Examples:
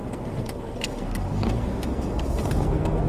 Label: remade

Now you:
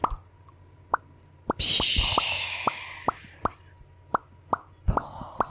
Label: recorded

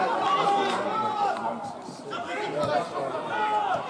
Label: recorded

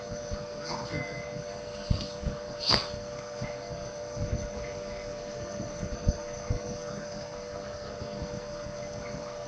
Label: remade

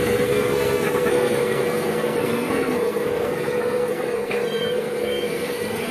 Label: remade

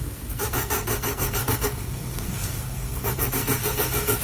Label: remade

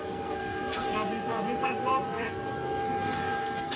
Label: remade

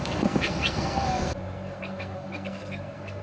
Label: remade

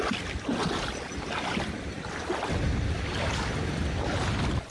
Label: recorded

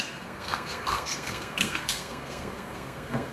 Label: remade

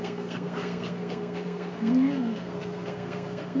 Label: remade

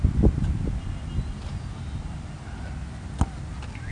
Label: recorded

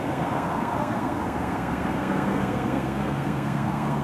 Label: remade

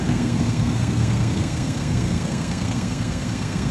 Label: remade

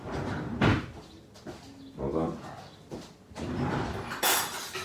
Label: recorded